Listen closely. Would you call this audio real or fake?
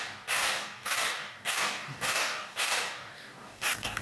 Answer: fake